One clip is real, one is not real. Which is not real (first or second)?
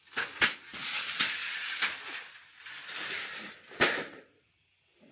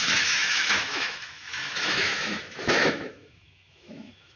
second